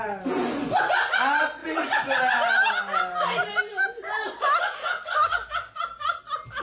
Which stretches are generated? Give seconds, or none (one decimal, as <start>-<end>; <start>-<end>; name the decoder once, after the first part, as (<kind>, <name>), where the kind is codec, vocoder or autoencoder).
1.6-2.2 (vocoder, Vocos); 4.8-5.3